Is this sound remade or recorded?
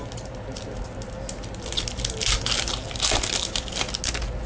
recorded